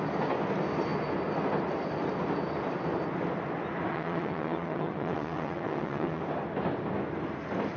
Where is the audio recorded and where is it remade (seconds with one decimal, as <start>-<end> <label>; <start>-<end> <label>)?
0.0-3.9 recorded; 3.9-6.2 remade; 6.2-7.8 recorded